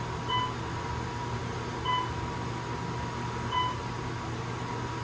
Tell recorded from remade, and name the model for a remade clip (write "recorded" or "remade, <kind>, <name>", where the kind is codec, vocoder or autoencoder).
recorded